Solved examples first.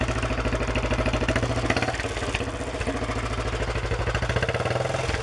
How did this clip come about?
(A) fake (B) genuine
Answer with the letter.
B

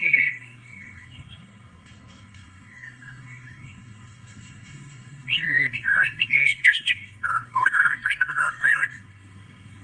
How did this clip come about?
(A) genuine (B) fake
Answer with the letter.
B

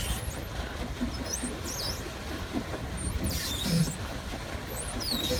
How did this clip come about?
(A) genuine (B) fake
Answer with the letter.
A